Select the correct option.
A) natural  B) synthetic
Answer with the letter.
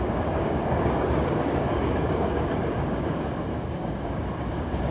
B